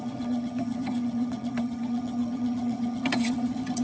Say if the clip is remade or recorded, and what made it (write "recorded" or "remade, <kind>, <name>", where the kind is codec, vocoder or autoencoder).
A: remade, vocoder, HiFi-GAN